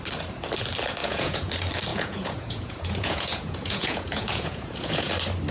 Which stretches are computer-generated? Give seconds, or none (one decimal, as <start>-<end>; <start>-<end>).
1.0-1.5; 1.9-5.1